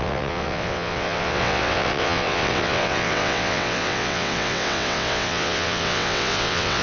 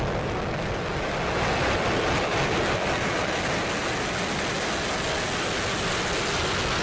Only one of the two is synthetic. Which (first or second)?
first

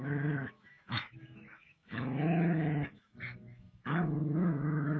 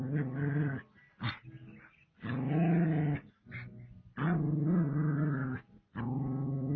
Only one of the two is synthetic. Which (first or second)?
first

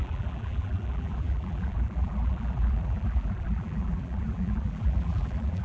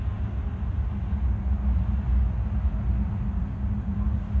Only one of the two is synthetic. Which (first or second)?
first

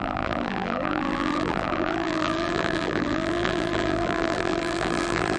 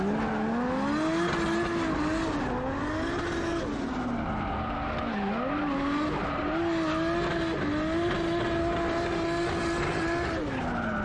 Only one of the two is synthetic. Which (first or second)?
first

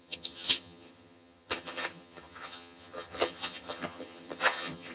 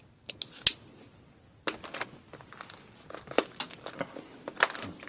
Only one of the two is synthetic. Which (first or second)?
first